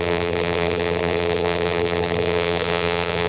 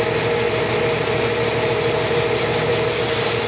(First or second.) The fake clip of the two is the first